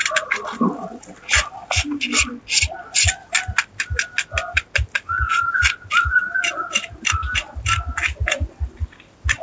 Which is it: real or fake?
real